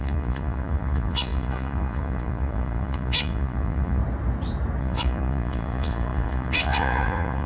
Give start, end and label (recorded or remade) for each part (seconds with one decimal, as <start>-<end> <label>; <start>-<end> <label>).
0.0-4.0 remade; 4.0-4.8 recorded; 4.8-7.5 remade